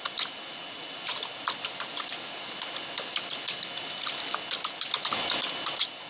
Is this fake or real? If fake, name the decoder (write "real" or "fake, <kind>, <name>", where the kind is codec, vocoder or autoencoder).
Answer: real